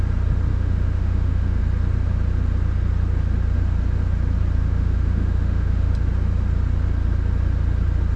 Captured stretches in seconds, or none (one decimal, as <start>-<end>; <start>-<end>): 0.0-0.5; 1.6-4.6; 5.9-8.2